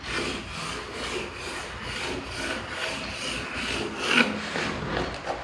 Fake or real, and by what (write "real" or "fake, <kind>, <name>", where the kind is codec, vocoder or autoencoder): real